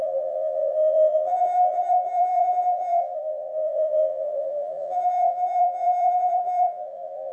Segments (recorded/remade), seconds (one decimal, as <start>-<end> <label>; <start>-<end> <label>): 0.0-7.3 remade